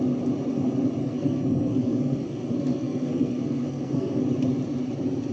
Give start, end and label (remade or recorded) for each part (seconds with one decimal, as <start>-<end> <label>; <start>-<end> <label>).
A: 0.0-1.0 recorded; 1.0-4.2 remade; 4.2-5.3 recorded